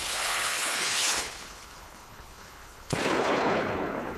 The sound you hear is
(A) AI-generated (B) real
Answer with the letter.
A